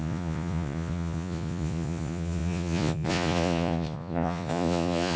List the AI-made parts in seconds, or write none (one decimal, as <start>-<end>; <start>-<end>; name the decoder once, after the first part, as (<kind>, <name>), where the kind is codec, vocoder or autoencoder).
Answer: 0.0-5.2 (vocoder, Vocos)